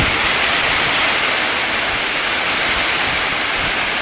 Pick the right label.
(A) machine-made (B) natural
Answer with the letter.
B